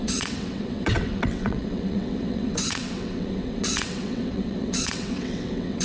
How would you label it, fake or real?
fake